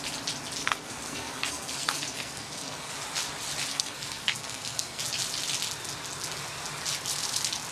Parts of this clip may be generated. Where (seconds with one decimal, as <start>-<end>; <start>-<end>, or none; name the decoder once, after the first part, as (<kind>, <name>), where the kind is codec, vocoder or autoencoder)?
0.6-2.9 (codec, SNAC); 3.7-5.0